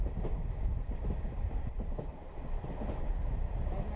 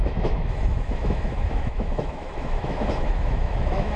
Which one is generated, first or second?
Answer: second